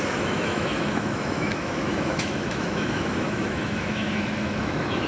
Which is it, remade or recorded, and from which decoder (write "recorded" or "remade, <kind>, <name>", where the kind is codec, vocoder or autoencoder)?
remade, autoencoder, DAC-VAE